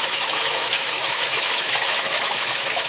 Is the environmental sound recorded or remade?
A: remade